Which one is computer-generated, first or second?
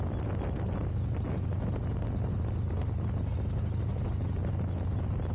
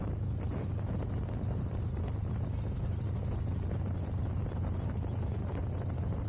second